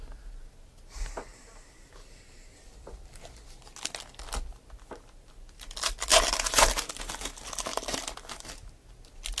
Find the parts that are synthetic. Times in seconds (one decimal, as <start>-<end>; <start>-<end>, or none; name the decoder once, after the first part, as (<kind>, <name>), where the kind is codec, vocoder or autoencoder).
1.3-3.3 (vocoder, BigVGAN v2); 6.1-7.3; 7.7-8.7